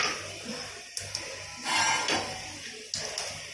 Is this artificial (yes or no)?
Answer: no